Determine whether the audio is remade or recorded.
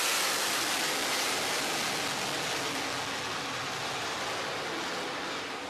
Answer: recorded